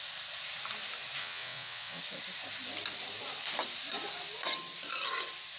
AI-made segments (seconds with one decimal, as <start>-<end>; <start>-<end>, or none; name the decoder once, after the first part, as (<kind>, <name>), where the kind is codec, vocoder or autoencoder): 1.2-2.0 (vocoder, WaveNeXt)

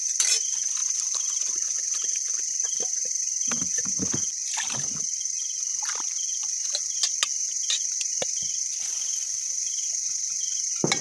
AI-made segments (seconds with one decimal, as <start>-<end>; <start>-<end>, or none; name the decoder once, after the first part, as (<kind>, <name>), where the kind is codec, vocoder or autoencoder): 0.8-3.8 (vocoder, BigVGAN v2)

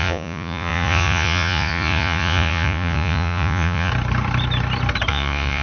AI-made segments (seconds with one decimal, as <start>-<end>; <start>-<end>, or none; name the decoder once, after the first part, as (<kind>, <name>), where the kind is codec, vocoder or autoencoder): 0.0-3.9 (vocoder, Vocos); 5.1-5.6